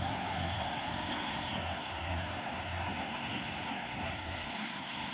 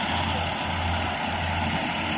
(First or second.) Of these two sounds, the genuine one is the second